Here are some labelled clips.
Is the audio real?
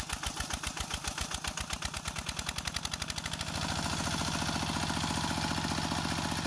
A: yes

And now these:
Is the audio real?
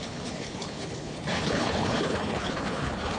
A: no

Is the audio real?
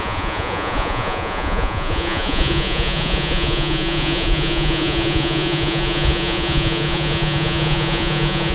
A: no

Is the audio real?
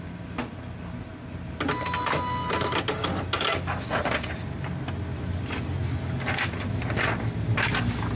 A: yes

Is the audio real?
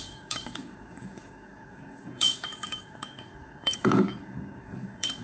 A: no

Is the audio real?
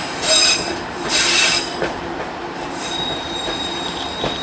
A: no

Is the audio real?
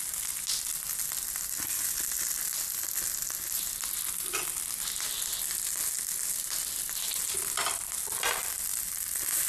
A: yes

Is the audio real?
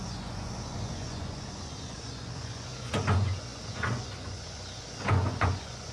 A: no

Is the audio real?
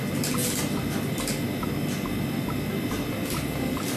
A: yes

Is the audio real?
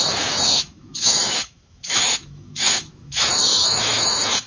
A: no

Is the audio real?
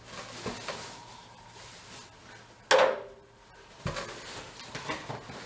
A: yes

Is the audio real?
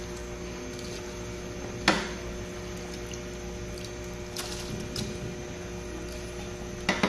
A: yes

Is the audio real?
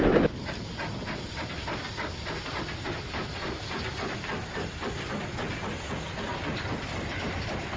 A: yes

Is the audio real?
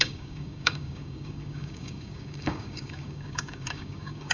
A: no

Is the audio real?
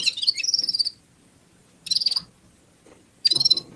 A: yes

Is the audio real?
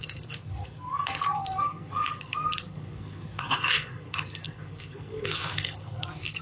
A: no